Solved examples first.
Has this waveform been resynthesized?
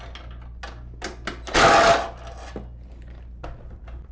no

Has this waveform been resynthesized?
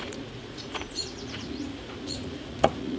yes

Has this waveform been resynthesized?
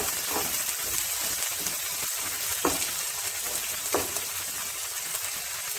no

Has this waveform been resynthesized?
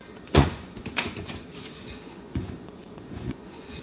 yes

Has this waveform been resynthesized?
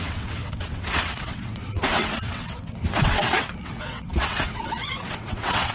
yes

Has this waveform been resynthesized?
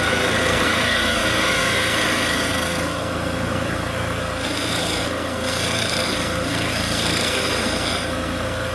yes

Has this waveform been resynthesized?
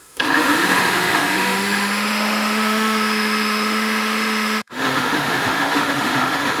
yes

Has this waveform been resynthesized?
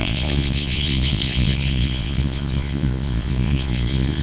yes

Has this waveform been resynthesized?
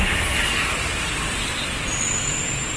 no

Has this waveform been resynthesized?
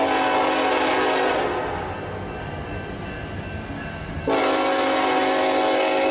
no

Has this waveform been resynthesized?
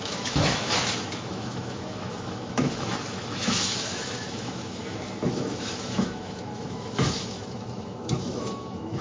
yes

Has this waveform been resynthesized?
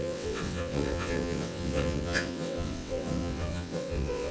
yes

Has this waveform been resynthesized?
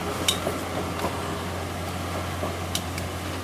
no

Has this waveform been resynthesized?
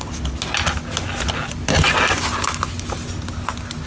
no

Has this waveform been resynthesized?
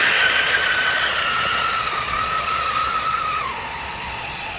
yes